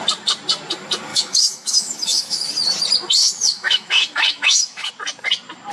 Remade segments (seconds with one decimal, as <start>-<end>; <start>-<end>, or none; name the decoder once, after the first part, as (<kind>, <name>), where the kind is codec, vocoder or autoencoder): 1.1-2.5 (autoencoder, DAC-VAE); 3.2-4.9